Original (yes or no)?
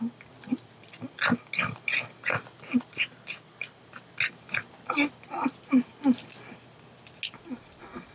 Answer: yes